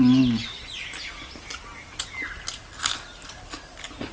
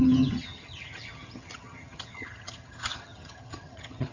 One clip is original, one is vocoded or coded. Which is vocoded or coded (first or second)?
second